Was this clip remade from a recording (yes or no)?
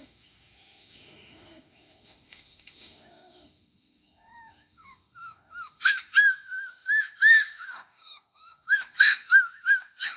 yes